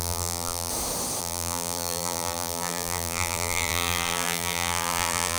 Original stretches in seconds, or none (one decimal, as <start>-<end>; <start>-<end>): 0.7-1.2